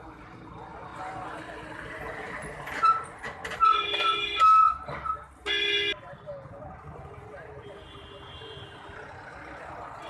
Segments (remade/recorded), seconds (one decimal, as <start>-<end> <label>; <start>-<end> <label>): 0.0-10.1 recorded